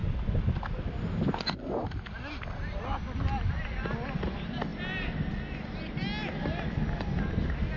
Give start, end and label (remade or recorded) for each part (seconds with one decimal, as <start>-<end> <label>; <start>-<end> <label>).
0.0-7.8 recorded